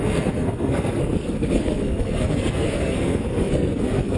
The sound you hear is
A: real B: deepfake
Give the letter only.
B